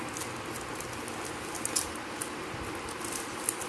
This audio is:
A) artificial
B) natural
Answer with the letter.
B